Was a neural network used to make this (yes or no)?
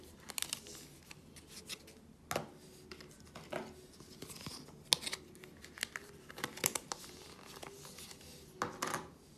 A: no